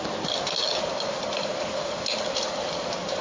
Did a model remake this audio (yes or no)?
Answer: no